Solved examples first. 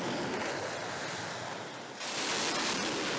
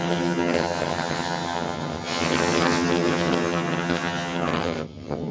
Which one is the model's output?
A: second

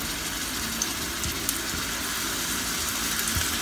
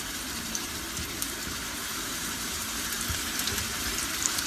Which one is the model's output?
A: second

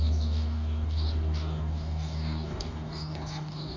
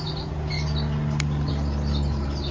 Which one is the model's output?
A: first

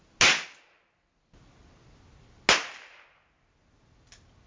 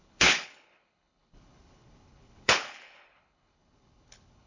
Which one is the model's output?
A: second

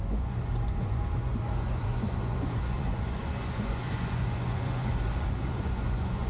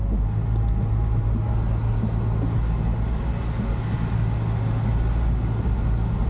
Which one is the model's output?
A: first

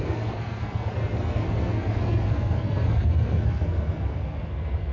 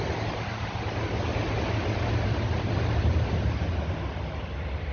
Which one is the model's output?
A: first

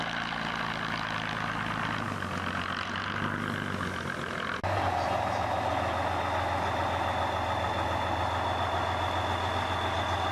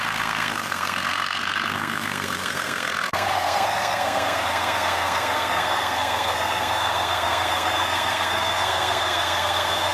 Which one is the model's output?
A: second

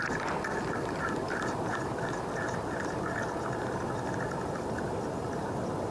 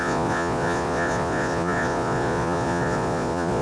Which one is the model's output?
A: second